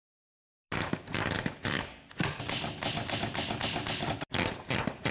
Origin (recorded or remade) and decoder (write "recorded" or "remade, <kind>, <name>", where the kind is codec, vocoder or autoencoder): recorded